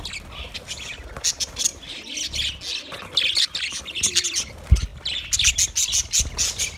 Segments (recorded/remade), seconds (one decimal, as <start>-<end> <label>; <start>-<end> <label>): 0.0-6.8 recorded